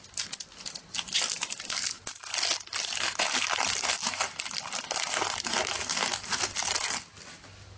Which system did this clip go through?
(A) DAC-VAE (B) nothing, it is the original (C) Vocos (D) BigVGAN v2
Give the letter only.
B